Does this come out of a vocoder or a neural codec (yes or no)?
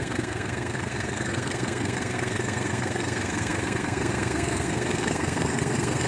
yes